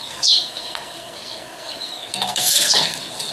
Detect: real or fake fake